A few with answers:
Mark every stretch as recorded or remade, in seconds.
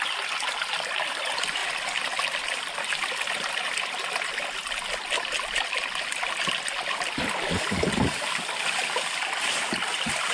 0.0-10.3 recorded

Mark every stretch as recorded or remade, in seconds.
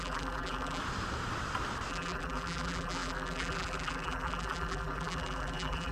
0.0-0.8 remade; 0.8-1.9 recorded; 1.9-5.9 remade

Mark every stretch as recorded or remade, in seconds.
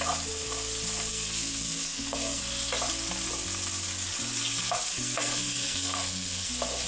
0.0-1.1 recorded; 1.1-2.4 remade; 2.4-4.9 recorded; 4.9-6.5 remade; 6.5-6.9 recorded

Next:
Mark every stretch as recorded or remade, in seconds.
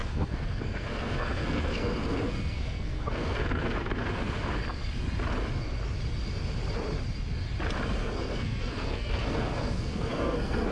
0.0-4.4 remade; 4.4-8.0 recorded; 8.0-10.7 remade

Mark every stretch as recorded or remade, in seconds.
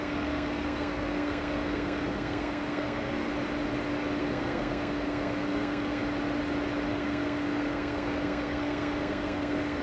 0.0-3.3 remade; 3.3-4.2 recorded; 4.2-6.0 remade; 6.0-6.9 recorded; 6.9-9.8 remade